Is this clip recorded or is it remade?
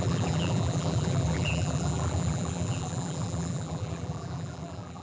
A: remade